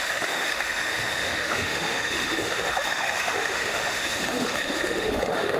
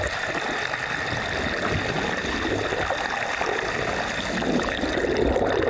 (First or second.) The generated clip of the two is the first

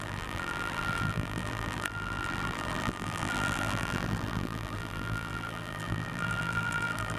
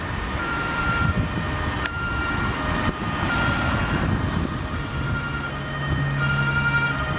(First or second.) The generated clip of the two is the first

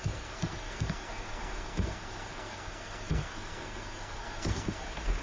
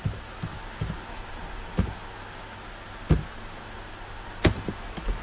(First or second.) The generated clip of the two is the first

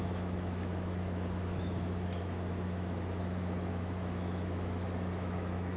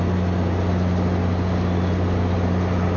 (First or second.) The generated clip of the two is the first